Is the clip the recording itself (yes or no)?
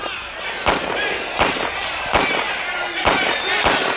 yes